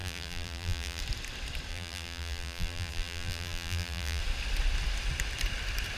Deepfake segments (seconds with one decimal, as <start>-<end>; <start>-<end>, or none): 0.0-1.0; 1.7-4.2